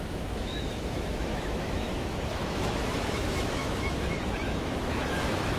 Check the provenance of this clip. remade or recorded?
remade